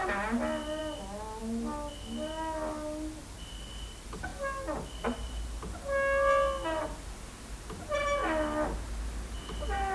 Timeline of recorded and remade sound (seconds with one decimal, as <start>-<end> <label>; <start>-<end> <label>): 0.0-1.4 recorded; 1.4-1.9 remade; 1.9-9.9 recorded